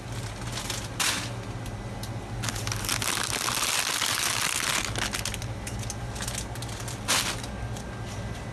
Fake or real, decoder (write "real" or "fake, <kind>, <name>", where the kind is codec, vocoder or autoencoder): real